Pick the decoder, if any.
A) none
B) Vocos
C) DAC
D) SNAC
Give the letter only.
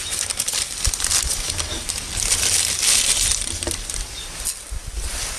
A